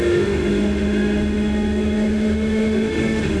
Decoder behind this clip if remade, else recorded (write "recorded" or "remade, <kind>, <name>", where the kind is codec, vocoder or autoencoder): remade, autoencoder, DAC-VAE